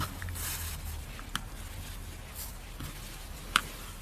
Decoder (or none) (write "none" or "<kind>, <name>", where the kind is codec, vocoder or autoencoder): none